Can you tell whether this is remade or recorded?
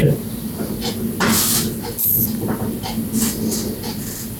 recorded